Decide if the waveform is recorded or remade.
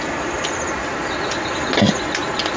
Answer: recorded